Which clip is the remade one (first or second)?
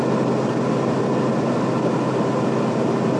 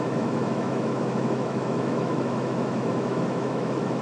second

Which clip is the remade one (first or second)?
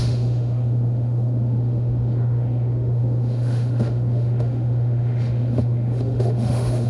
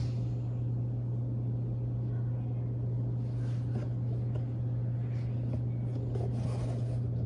first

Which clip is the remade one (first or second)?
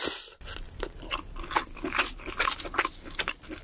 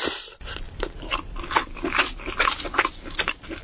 second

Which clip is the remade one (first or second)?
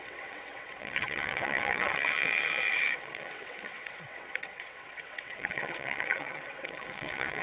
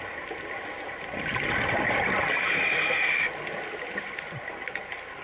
first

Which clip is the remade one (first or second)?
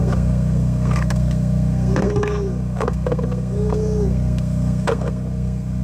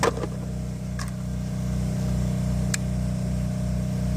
first